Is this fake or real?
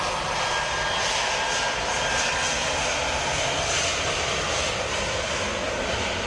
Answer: real